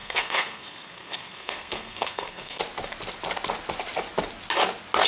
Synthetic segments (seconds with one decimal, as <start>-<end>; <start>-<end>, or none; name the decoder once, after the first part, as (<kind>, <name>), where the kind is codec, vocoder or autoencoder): 0.0-2.6 (codec, SNAC)